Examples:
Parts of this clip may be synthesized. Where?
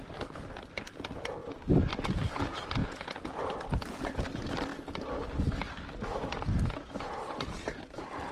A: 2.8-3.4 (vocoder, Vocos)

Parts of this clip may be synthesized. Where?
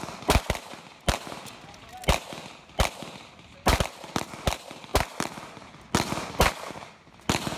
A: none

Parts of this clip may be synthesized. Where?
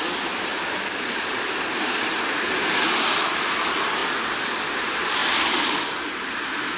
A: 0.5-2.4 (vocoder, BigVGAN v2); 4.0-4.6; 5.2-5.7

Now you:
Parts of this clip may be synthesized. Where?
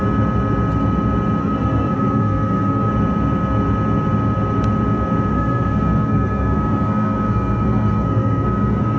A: 1.4-2.9 (codec, SNAC); 5.3-9.0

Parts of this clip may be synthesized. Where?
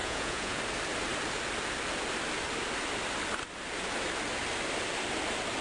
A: 0.0-0.6 (vocoder, Vocos)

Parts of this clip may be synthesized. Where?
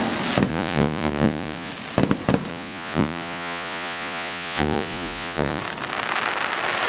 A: 0.5-1.7 (vocoder, Vocos); 2.5-5.6